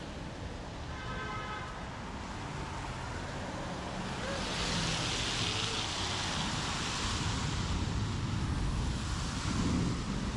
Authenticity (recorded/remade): recorded